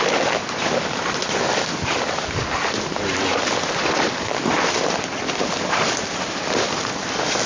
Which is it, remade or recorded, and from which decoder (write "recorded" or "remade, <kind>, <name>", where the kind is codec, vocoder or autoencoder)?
recorded